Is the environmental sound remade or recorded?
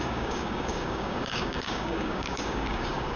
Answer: remade